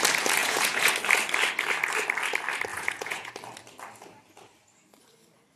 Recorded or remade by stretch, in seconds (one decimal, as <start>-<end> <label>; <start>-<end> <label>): 0.0-0.4 recorded; 0.4-0.9 remade; 0.9-2.7 recorded; 2.7-3.3 remade; 3.3-5.6 recorded